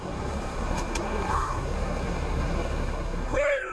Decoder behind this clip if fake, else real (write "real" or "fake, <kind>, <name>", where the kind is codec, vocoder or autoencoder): fake, codec, SNAC